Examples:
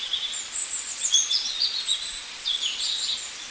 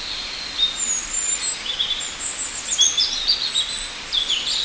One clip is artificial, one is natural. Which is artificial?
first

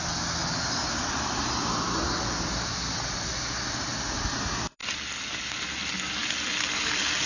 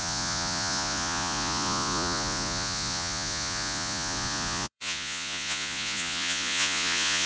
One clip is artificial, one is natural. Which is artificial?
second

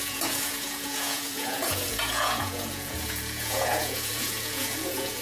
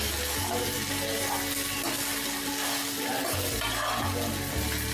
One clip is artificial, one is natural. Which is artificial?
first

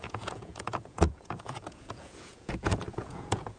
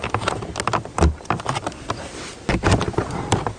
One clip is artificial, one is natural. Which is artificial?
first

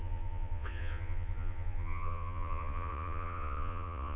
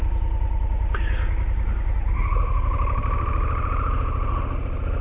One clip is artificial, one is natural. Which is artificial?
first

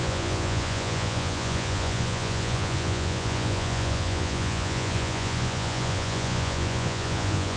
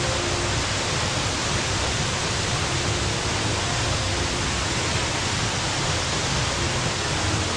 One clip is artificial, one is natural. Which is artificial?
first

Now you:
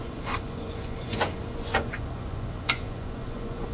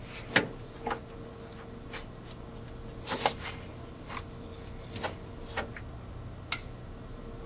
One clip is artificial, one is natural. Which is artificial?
first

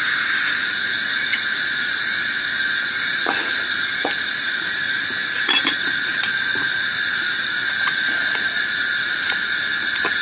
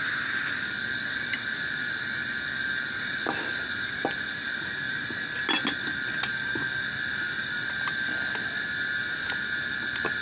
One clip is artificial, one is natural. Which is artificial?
first